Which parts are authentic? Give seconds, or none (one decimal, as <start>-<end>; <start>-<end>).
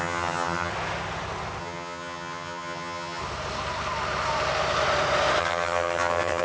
0.7-1.6; 3.2-5.4